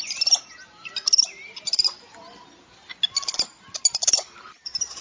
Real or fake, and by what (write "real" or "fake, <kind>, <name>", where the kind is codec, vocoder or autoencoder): real